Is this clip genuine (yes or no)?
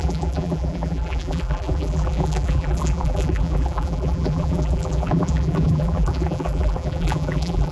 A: no